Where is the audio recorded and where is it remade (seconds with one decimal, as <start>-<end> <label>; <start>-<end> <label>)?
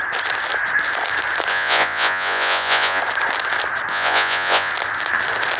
0.0-1.5 recorded; 1.5-3.0 remade; 3.0-3.9 recorded; 3.9-4.7 remade; 4.7-5.6 recorded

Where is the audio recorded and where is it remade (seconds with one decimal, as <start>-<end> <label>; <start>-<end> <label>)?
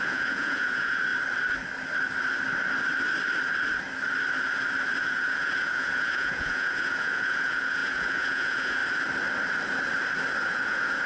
0.0-1.1 remade; 1.1-5.0 recorded; 5.0-8.8 remade; 8.8-10.5 recorded; 10.5-11.1 remade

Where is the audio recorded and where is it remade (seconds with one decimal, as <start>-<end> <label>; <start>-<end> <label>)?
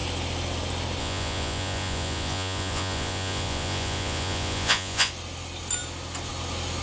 0.0-1.0 recorded; 1.0-5.1 remade; 5.1-6.8 recorded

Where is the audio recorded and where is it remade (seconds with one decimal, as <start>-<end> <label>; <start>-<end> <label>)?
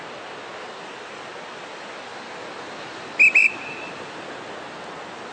0.0-5.3 recorded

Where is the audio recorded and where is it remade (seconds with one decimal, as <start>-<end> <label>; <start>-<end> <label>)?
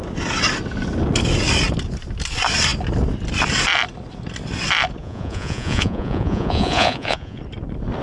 0.0-5.0 recorded; 5.0-7.4 remade; 7.4-8.0 recorded